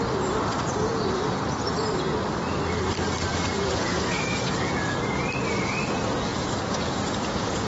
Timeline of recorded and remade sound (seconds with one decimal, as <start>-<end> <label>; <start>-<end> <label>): 0.0-3.3 recorded; 3.3-5.2 remade; 5.2-6.3 recorded; 6.3-7.7 remade